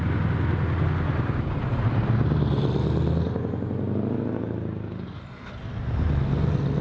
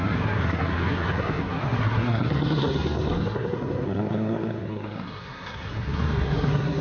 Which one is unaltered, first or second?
first